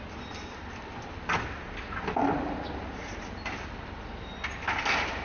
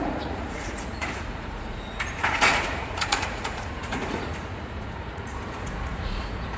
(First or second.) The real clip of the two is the first